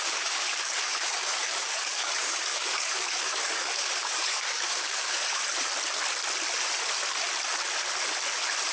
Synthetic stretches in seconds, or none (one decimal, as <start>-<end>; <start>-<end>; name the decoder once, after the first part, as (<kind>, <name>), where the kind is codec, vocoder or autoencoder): 0.0-5.4 (codec, DAC)